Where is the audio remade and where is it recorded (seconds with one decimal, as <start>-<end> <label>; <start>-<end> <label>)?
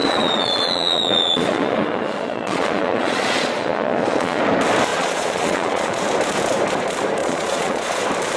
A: 0.0-4.4 remade; 4.4-4.9 recorded; 4.9-6.0 remade; 6.0-7.2 recorded; 7.2-8.0 remade; 8.0-8.4 recorded